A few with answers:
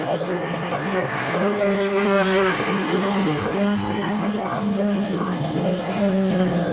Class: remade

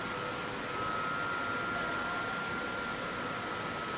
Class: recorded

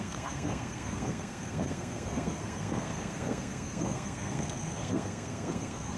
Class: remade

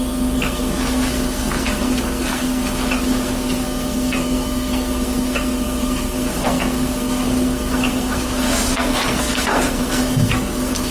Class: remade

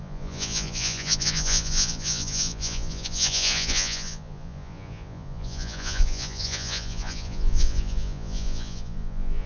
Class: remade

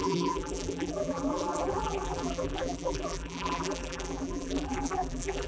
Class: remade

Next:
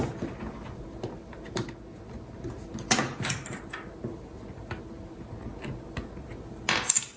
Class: recorded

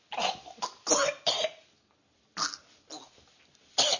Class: recorded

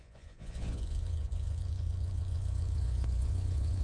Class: remade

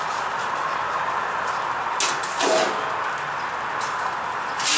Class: recorded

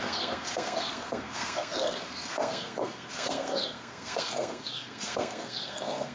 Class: remade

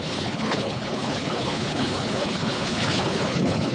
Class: remade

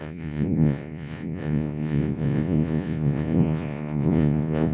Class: remade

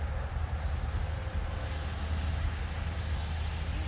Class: recorded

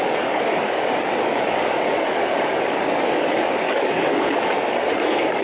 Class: remade